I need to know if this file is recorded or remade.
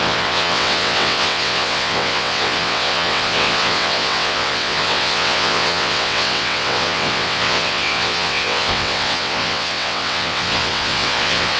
remade